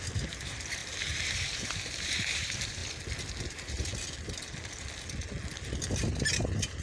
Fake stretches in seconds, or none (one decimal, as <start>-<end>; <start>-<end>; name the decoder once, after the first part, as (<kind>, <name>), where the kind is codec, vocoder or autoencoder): 0.0-2.8 (vocoder, BigVGAN v2); 3.5-3.9; 6.0-6.8